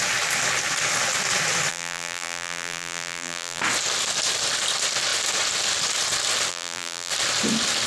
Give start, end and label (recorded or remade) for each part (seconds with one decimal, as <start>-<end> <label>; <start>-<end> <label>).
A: 0.0-1.7 recorded; 1.7-3.6 remade; 3.6-6.5 recorded; 6.5-7.1 remade; 7.1-7.9 recorded